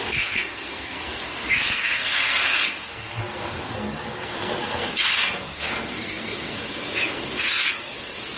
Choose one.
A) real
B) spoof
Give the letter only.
B